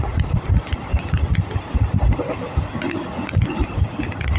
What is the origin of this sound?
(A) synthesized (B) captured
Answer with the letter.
B